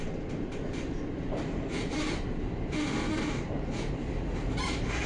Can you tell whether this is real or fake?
real